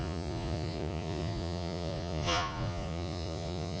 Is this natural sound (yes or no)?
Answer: no